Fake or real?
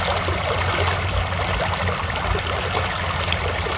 real